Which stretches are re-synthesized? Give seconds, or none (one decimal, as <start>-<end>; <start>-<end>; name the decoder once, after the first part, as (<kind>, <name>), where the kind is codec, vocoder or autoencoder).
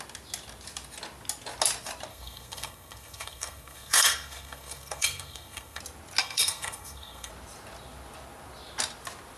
2.1-5.8 (codec, SNAC); 6.2-7.3